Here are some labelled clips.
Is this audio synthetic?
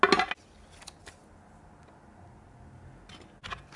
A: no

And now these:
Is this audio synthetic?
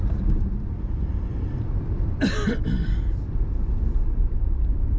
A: yes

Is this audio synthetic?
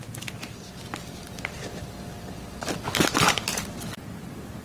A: no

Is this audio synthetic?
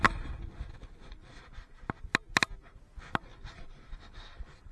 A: no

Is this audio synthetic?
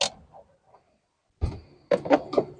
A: no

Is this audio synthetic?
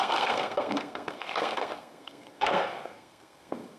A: yes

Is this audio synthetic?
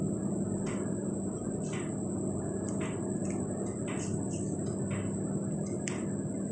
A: no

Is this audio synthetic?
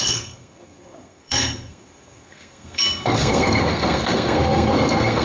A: yes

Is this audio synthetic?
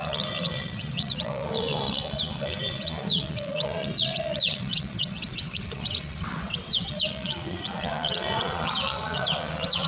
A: yes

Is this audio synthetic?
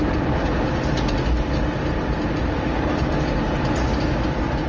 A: no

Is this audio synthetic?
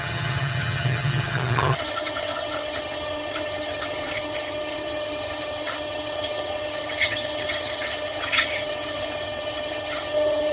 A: yes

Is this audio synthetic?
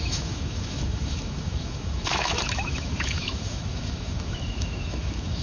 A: yes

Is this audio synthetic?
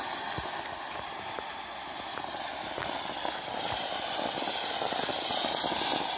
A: no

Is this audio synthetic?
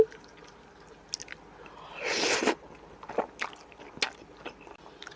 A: no